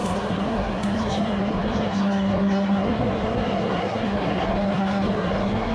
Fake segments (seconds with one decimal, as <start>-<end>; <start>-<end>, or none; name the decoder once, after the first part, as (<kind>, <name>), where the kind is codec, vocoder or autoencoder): 0.0-5.7 (codec, SNAC)